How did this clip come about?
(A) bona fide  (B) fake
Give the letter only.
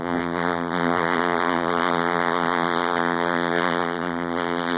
B